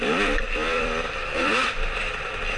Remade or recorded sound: remade